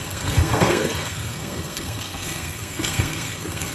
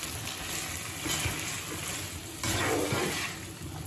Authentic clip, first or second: second